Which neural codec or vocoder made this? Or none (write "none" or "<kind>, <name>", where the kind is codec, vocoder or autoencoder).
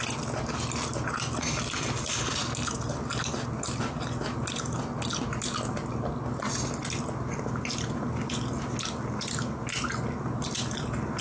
none